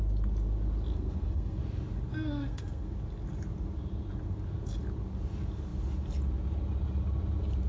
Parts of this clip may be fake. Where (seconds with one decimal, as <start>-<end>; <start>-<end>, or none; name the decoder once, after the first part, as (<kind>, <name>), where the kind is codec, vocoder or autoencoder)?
0.9-1.6 (codec, SNAC); 2.1-3.0